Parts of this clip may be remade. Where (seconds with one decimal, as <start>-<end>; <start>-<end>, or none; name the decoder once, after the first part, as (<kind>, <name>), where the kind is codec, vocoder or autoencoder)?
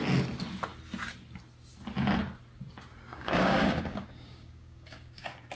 3.1-5.5 (codec, DAC)